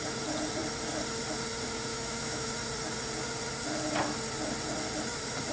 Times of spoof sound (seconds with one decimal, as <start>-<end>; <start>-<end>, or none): 1.9-2.5